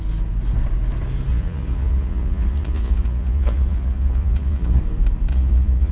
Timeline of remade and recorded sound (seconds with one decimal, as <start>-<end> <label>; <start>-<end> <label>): 0.0-1.3 recorded; 1.3-4.8 remade; 4.8-5.3 recorded; 5.3-5.9 remade

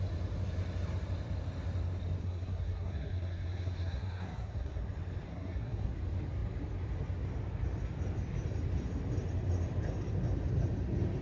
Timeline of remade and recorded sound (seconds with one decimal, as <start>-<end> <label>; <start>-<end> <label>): 0.0-2.2 recorded; 2.2-4.8 remade; 4.8-5.3 recorded; 5.3-5.9 remade; 5.9-11.2 recorded

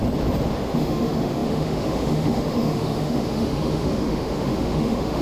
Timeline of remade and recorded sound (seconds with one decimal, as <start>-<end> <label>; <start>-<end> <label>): 0.0-0.6 recorded; 0.6-5.2 remade

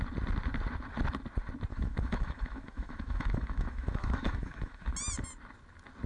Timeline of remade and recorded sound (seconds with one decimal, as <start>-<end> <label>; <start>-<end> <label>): 0.0-1.7 recorded; 1.7-4.9 remade; 4.9-6.1 recorded

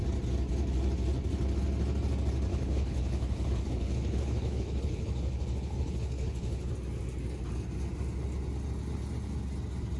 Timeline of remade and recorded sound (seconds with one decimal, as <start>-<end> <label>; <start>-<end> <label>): 0.0-2.5 recorded; 2.5-6.7 remade; 6.7-10.0 recorded

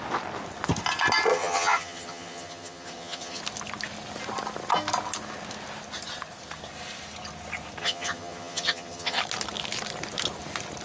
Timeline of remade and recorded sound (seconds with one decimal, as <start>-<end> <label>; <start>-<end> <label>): 0.0-1.3 recorded; 1.3-3.4 remade; 3.4-7.8 recorded; 7.8-9.2 remade; 9.2-10.8 recorded

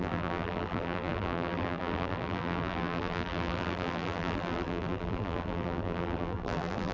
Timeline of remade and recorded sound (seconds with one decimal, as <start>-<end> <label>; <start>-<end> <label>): 0.0-6.9 remade

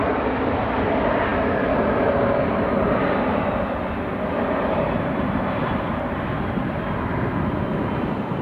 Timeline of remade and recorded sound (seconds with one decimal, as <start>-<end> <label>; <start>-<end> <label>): 0.0-8.4 recorded